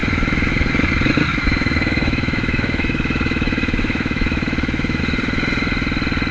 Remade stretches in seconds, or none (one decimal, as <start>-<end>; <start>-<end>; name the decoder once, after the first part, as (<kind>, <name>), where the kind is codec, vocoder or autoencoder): 0.0-0.7 (autoencoder, DAC-VAE); 1.3-5.0